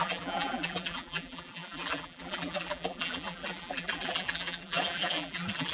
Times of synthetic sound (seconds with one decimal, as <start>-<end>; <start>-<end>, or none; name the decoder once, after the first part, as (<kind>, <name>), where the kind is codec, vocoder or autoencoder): 0.0-5.7 (vocoder, BigVGAN v2)